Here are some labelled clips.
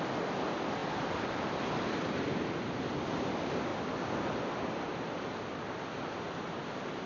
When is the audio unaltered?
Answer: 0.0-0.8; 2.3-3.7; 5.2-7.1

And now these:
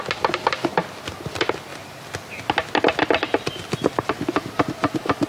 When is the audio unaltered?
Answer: 0.0-5.3